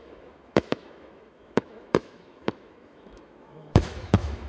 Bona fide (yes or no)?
no